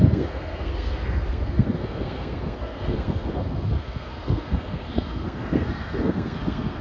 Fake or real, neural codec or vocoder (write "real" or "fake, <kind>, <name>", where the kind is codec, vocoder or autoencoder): fake, codec, SNAC